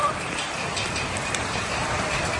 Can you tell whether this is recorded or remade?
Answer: recorded